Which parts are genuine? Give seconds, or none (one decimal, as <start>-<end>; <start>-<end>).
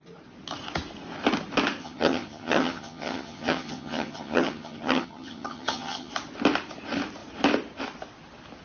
0.0-1.8; 6.1-8.6